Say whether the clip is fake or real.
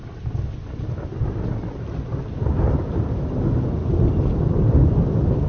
real